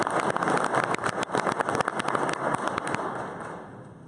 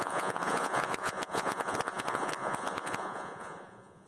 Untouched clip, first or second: first